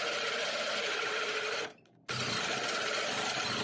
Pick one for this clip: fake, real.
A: real